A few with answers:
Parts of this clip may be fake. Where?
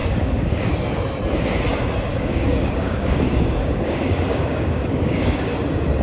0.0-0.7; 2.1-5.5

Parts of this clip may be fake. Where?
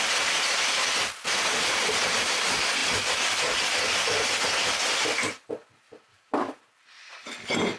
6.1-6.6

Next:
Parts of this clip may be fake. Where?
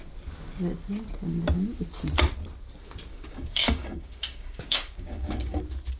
3.1-5.6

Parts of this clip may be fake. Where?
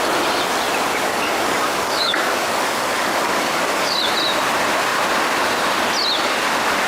0.9-4.0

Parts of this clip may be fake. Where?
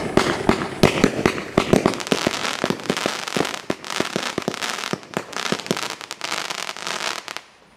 none